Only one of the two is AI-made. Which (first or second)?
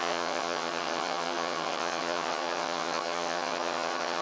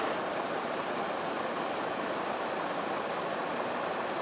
first